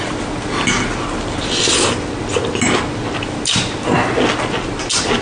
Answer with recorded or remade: recorded